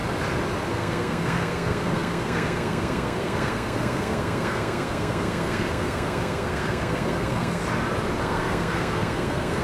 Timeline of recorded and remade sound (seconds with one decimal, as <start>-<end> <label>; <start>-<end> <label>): 0.0-0.7 recorded; 0.7-7.6 remade; 7.6-8.2 recorded; 8.2-9.6 remade